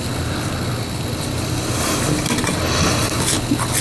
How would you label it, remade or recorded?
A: recorded